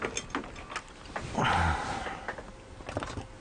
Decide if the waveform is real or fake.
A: real